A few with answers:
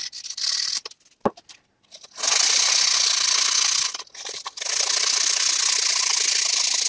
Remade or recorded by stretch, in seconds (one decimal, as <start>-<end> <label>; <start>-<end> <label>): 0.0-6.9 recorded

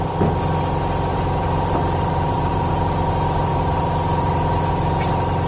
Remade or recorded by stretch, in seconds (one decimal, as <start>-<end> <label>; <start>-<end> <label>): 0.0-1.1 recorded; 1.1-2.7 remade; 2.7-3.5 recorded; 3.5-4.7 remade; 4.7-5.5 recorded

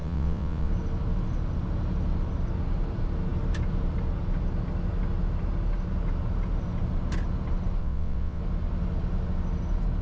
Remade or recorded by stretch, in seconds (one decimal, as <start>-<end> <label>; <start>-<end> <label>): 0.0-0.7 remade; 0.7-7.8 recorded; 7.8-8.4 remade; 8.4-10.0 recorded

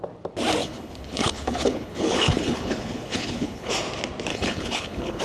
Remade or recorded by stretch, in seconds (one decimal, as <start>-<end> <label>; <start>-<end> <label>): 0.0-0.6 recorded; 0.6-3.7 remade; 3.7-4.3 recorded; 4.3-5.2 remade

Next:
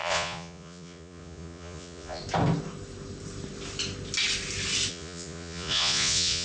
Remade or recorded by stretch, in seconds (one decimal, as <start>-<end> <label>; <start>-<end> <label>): 0.0-2.2 remade; 2.2-4.9 recorded; 4.9-6.4 remade

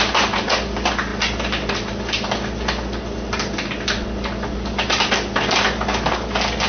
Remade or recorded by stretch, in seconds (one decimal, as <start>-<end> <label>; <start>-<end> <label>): 0.0-6.7 recorded

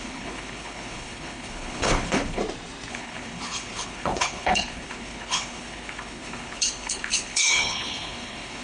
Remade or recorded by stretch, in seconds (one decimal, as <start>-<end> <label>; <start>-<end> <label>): 0.0-2.4 remade; 2.4-2.9 recorded; 2.9-8.6 remade

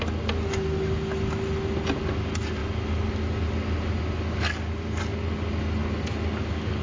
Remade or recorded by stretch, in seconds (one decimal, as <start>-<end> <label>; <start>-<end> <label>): 0.0-6.8 recorded